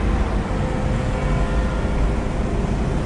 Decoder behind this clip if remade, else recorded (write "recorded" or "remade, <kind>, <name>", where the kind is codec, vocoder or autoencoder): recorded